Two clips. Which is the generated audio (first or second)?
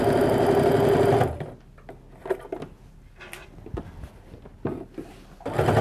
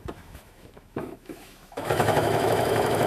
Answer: second